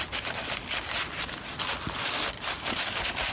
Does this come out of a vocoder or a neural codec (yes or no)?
no